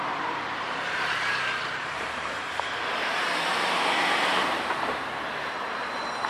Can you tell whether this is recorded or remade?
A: remade